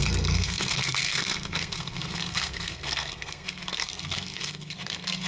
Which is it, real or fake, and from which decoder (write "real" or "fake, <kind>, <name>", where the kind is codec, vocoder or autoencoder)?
fake, codec, SNAC